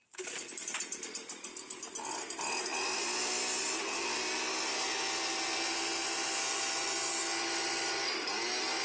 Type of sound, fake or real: real